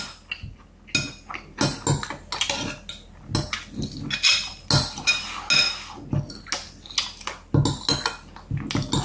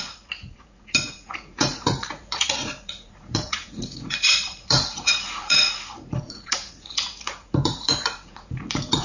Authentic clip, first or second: first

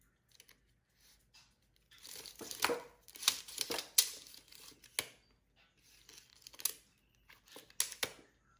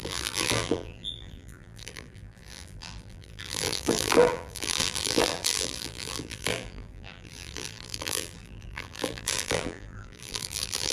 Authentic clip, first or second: first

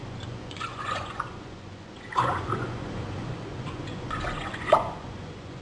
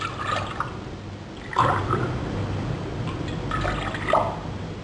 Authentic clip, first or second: second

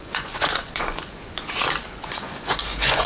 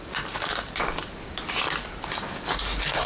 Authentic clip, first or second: second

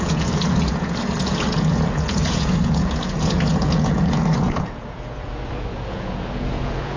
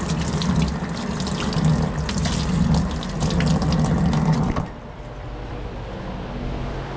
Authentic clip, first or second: second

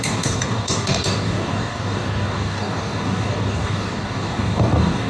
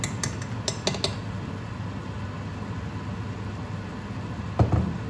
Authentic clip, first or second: second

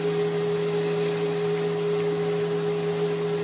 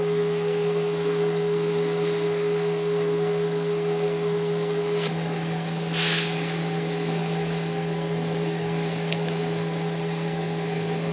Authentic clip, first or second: first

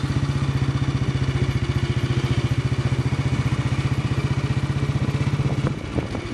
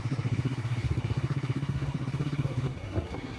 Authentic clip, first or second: first